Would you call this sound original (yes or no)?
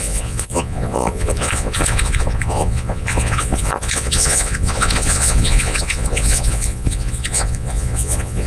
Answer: no